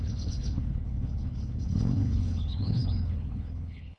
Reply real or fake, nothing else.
fake